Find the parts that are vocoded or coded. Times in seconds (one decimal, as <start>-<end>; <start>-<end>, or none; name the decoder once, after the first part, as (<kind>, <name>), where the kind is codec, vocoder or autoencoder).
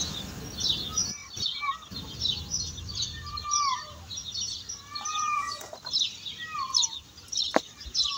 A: 5.1-5.7 (vocoder, Vocos)